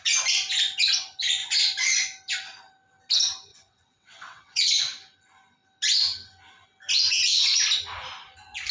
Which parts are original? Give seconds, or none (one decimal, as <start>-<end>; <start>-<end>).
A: 0.0-3.5; 4.7-8.7